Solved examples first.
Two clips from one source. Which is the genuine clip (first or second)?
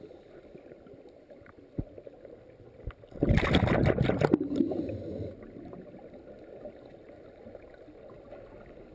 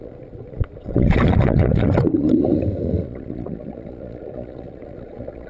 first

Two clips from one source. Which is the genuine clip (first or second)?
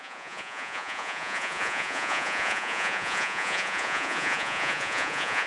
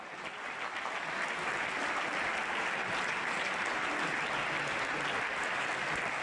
second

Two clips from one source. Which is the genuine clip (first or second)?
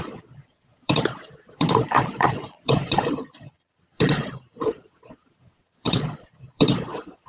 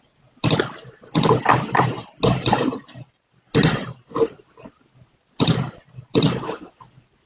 second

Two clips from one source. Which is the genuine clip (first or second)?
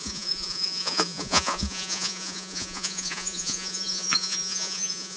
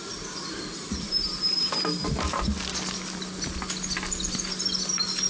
second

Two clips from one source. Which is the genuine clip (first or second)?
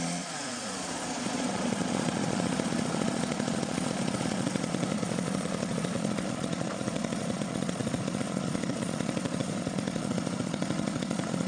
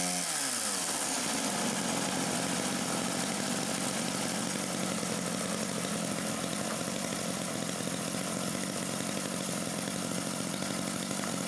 second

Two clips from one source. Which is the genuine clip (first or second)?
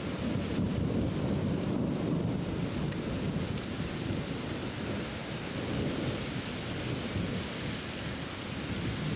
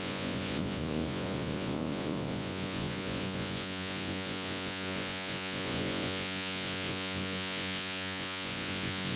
first